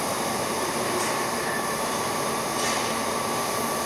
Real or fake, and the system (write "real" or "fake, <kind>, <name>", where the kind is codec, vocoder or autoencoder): fake, vocoder, BigVGAN v2